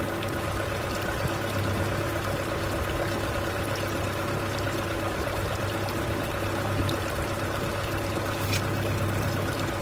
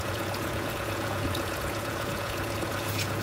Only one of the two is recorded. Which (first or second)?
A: first